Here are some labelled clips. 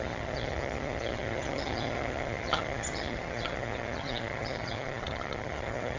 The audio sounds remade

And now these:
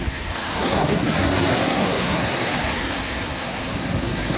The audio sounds remade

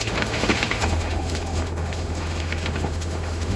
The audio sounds remade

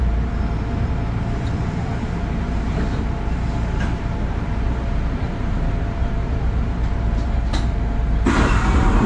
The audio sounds remade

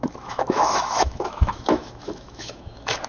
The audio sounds remade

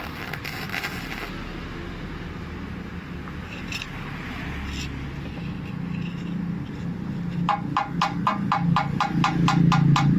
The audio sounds recorded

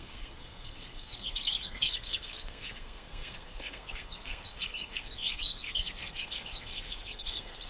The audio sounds remade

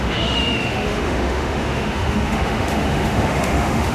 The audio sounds remade